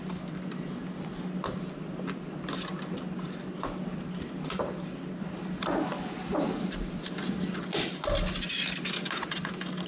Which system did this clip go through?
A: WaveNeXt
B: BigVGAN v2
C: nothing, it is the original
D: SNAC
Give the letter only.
C